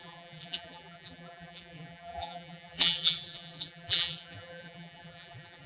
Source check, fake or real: fake